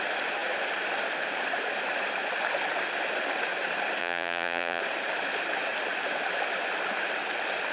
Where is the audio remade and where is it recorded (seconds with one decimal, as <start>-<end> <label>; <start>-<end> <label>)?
0.0-4.0 recorded; 4.0-4.8 remade; 4.8-7.7 recorded